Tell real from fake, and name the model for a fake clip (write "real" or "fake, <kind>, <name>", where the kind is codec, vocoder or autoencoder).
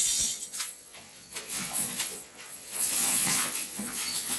fake, vocoder, Vocos